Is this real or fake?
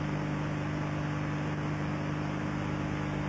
real